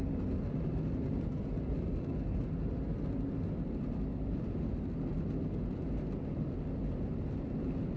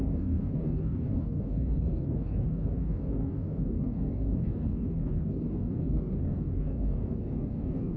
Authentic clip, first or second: first